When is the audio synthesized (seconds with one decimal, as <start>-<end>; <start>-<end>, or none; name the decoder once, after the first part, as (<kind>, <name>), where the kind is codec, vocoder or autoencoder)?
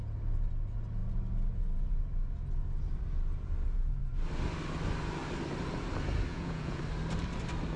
6.3-6.8 (vocoder, Vocos)